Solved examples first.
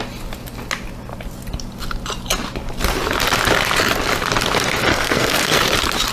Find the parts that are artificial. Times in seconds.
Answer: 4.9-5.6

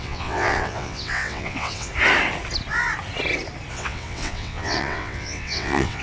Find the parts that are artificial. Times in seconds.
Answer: 0.0-1.9; 3.7-6.0

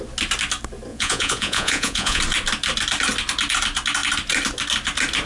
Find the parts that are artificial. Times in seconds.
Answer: 0.9-2.2

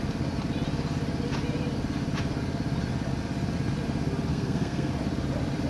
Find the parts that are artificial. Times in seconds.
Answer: 4.3-4.9

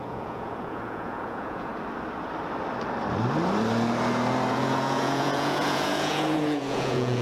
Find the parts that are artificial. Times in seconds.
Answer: 0.0-1.7; 4.5-7.2

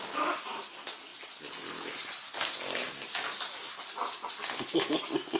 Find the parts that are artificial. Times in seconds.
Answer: none

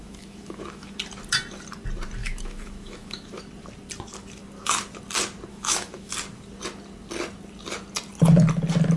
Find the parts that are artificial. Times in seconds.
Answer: 0.0-1.0; 2.2-3.4; 5.5-6.1